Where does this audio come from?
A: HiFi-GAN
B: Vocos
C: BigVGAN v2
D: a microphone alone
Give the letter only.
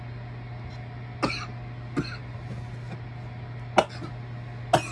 D